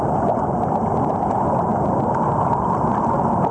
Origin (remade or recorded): recorded